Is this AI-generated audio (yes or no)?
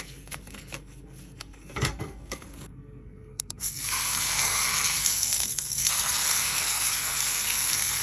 yes